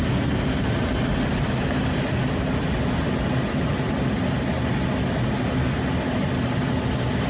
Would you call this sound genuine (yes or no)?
yes